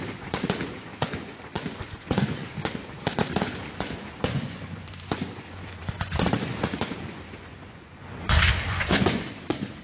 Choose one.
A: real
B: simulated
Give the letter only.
B